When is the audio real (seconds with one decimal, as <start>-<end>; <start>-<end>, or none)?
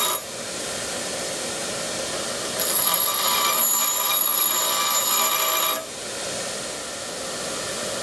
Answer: 0.0-8.0